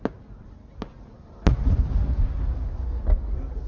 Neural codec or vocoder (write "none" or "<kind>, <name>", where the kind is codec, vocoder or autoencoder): none